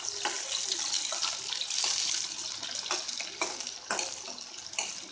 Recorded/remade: recorded